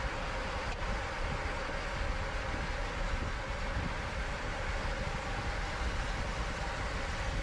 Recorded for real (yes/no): yes